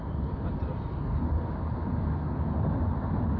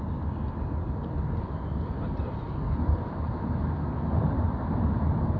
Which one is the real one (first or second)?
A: first